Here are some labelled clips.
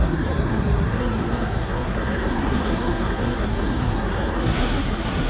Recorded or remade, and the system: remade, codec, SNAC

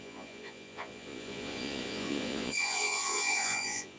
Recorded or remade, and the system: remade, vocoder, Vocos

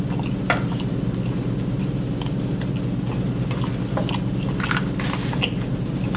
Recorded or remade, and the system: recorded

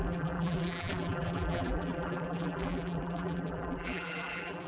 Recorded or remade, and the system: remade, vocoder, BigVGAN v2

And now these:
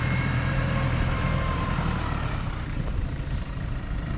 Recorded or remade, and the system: remade, vocoder, BigVGAN v2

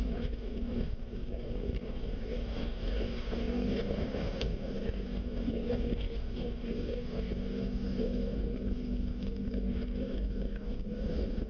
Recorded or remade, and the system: remade, codec, DAC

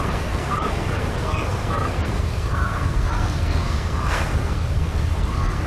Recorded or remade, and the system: remade, codec, SNAC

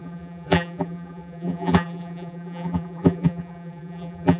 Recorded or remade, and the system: remade, vocoder, BigVGAN v2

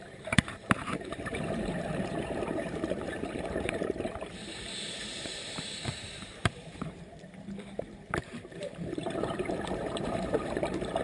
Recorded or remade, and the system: remade, vocoder, BigVGAN v2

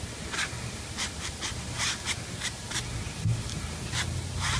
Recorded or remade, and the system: recorded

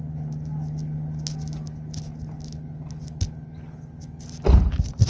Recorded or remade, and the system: recorded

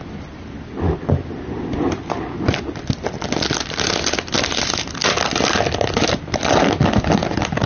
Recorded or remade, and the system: recorded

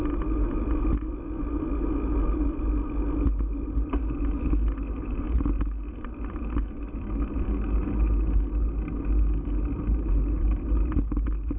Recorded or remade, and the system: recorded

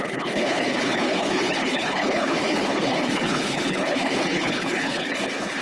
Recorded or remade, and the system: remade, codec, HILCodec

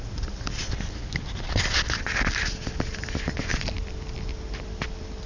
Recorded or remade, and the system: recorded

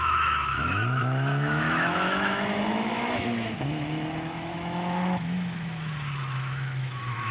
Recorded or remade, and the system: remade, autoencoder, DAC-VAE